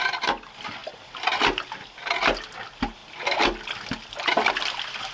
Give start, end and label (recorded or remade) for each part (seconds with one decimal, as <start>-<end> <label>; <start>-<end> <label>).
0.0-5.1 recorded